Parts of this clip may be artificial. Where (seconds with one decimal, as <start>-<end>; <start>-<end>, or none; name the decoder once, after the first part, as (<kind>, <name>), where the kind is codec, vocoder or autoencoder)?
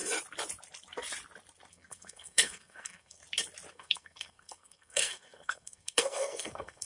1.7-3.2 (codec, SNAC); 3.7-6.9